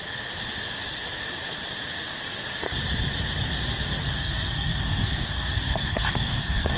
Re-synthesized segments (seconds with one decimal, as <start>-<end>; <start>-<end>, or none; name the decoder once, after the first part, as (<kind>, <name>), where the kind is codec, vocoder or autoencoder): 4.1-6.8 (codec, SNAC)